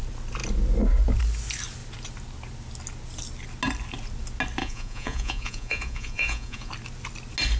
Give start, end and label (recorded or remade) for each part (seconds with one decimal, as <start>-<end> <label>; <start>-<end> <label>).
0.0-4.6 recorded; 4.6-6.7 remade; 6.7-7.6 recorded